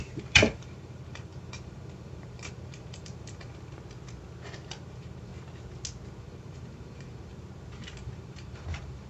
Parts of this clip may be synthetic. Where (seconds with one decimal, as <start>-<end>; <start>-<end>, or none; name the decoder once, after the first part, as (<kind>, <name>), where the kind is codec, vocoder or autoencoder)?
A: 0.0-3.5 (vocoder, BigVGAN v2); 4.8-5.3; 6.2-7.3; 8.0-9.1